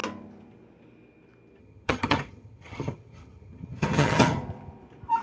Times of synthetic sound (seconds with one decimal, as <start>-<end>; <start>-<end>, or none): 1.6-4.4